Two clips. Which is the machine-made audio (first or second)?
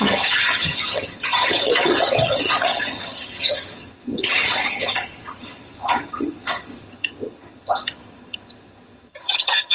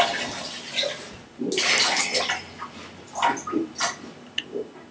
first